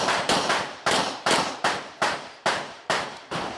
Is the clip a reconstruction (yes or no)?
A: yes